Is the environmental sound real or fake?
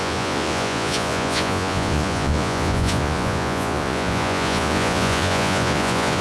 fake